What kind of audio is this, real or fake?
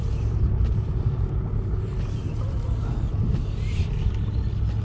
real